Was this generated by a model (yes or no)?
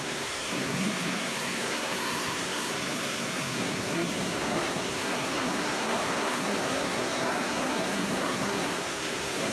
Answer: yes